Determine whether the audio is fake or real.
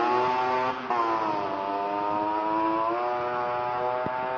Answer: real